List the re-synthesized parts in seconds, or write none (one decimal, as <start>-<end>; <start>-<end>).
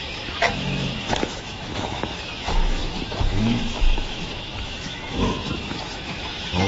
0.0-6.7